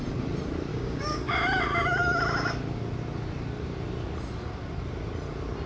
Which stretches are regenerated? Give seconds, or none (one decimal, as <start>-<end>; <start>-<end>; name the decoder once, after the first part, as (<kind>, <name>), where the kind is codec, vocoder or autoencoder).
0.7-1.3 (codec, DAC)